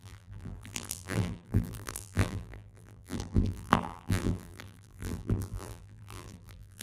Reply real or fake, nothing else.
fake